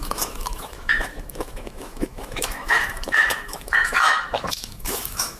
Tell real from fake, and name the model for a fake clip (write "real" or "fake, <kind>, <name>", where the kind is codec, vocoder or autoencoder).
fake, autoencoder, DAC-VAE